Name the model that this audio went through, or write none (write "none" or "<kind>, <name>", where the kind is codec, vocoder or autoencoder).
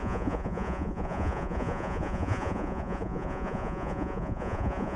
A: vocoder, Vocos